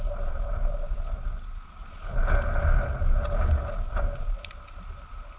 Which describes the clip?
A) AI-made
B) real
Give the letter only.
B